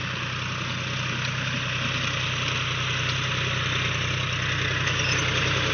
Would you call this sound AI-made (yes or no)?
no